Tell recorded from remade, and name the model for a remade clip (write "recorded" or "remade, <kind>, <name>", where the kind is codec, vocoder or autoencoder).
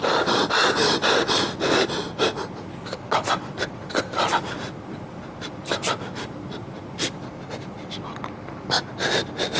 recorded